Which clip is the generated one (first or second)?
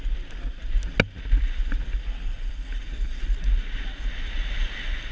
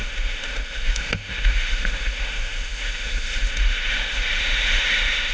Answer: second